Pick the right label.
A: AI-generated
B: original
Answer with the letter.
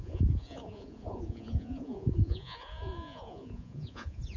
A